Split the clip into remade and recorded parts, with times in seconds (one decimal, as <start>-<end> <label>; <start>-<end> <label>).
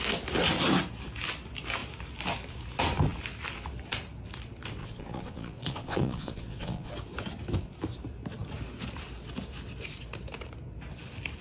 0.0-4.8 recorded; 4.8-6.9 remade; 6.9-11.4 recorded